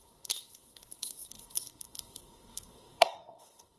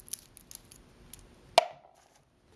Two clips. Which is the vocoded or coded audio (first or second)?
first